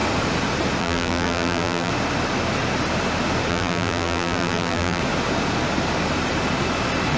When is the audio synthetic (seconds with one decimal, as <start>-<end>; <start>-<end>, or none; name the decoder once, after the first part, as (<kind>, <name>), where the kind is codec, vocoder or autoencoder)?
0.8-1.9 (vocoder, BigVGAN v2); 3.5-5.0